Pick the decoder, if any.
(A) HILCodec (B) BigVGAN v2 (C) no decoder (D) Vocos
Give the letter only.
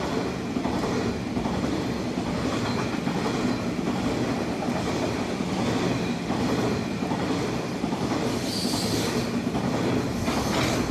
C